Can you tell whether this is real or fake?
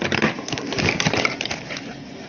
real